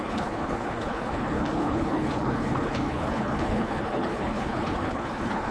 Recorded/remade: remade